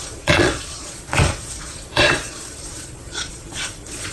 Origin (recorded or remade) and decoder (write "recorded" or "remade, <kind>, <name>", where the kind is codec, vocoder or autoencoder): remade, vocoder, Vocos